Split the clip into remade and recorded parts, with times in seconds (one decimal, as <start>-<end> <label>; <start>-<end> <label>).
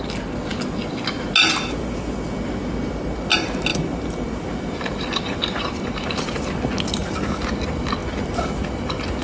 0.0-3.7 recorded; 3.7-6.1 remade; 6.1-7.0 recorded; 7.0-7.5 remade; 7.5-9.2 recorded